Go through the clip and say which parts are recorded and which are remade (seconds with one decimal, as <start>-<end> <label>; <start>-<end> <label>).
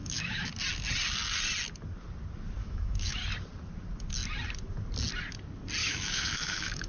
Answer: 0.0-0.5 remade; 0.5-2.6 recorded; 2.6-3.2 remade; 3.2-5.8 recorded; 5.8-6.9 remade